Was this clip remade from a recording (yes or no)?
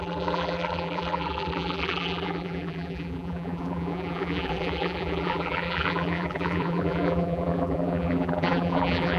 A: yes